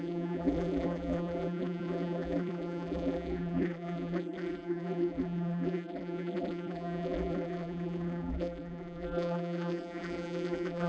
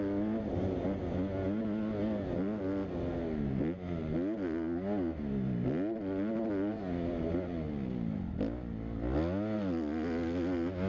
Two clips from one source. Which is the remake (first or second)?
first